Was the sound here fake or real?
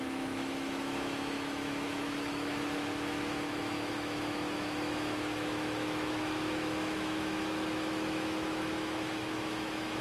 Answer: fake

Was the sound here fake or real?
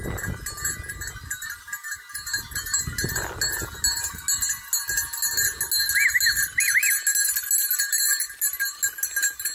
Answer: real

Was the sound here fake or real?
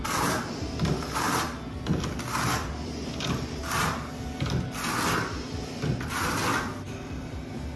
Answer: real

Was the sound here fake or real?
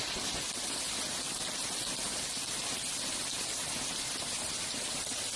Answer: real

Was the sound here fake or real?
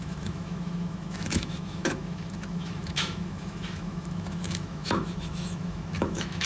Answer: fake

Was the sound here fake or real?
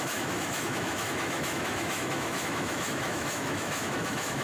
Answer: fake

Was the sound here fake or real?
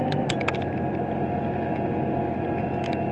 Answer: real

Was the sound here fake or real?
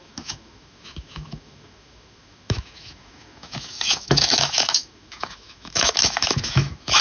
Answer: fake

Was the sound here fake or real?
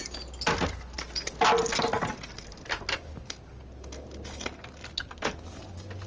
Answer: real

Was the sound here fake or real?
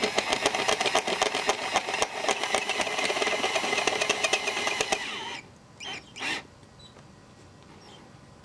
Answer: real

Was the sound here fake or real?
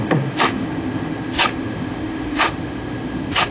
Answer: fake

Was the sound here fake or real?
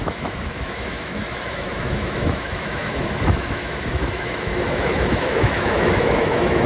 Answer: fake